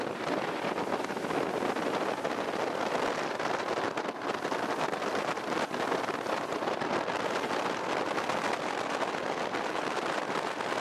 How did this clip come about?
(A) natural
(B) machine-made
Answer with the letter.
A